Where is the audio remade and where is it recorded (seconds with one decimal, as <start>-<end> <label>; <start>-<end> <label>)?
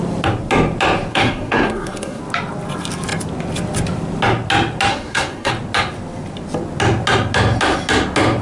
0.0-1.1 recorded; 1.1-2.2 remade; 2.2-4.9 recorded; 4.9-5.5 remade; 5.5-8.4 recorded